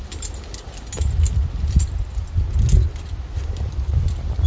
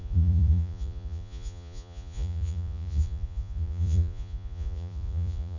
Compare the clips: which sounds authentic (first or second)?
first